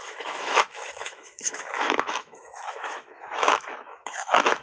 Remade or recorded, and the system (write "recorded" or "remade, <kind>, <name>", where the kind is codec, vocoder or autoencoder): remade, autoencoder, DAC-VAE